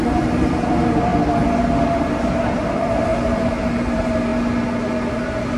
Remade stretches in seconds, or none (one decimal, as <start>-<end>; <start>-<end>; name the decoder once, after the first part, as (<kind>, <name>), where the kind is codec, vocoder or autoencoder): 0.0-1.1 (vocoder, BigVGAN v2); 2.3-4.3; 5.1-5.6